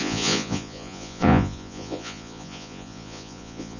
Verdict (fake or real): fake